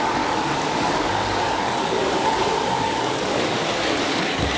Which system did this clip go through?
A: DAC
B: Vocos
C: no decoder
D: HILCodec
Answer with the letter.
A